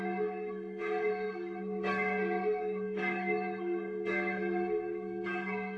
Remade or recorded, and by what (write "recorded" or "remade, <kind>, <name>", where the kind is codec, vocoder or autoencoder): remade, codec, SNAC